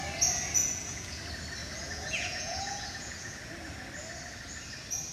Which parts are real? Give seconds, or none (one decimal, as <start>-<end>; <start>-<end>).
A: 0.0-0.6; 1.2-1.6; 3.4-5.1